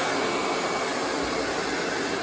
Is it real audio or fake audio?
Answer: real